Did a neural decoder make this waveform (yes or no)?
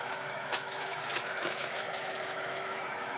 yes